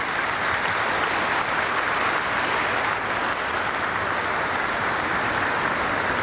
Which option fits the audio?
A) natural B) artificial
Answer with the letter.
A